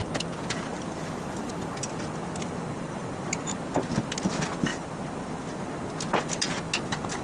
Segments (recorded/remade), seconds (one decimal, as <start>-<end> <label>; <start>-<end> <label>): 0.0-0.7 recorded; 0.7-1.5 remade; 1.5-4.7 recorded; 4.7-5.6 remade; 5.6-7.2 recorded